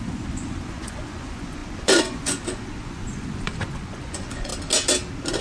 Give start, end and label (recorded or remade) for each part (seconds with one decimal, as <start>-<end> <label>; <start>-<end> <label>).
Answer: 0.0-4.5 remade; 4.5-5.4 recorded